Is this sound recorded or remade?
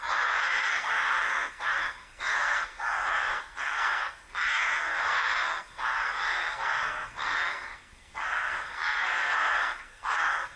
remade